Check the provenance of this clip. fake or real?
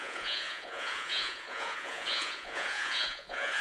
fake